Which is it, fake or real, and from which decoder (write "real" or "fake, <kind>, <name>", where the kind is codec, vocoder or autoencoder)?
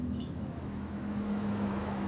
fake, autoencoder, DAC-VAE